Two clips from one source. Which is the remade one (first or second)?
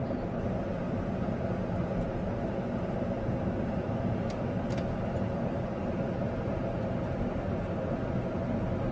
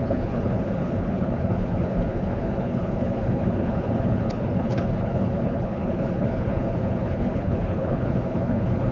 second